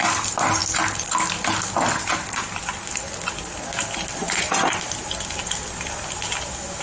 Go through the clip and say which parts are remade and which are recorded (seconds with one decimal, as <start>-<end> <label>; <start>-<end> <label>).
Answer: 0.0-6.8 recorded